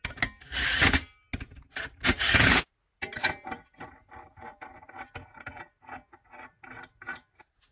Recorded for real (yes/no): yes